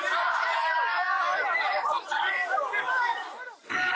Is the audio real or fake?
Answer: real